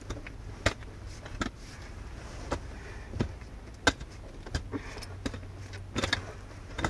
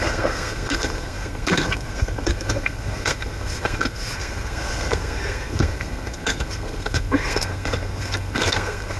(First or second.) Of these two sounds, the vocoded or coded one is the second